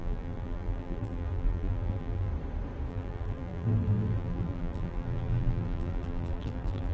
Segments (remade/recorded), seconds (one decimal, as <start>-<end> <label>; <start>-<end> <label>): 0.0-2.3 remade; 2.3-2.9 recorded; 2.9-6.9 remade